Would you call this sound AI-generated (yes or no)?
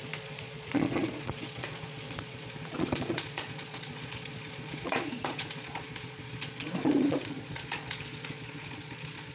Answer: yes